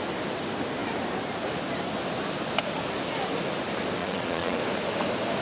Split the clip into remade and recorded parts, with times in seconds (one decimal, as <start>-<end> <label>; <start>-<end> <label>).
0.0-4.0 recorded; 4.0-4.6 remade; 4.6-5.4 recorded